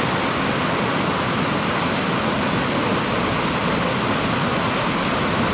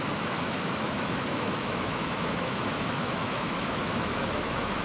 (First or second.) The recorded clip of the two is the first